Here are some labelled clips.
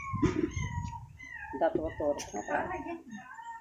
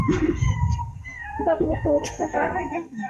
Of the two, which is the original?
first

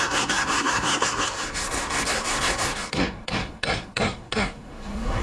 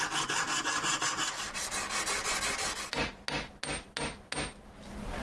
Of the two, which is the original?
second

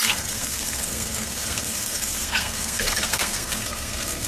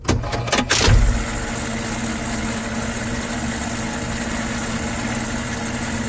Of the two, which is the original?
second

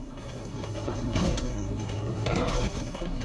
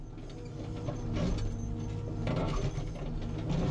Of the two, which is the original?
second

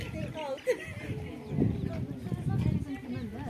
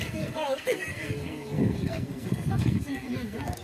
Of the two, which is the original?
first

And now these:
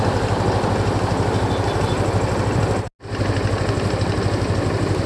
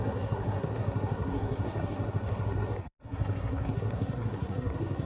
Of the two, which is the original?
first